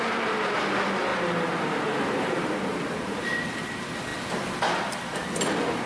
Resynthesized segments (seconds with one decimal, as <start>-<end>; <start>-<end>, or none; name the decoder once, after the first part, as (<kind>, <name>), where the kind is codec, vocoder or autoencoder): none